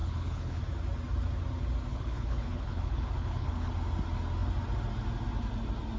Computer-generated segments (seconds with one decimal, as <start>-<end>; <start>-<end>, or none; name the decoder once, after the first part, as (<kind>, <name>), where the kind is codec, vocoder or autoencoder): 0.0-0.6 (codec, HILCodec); 1.9-3.7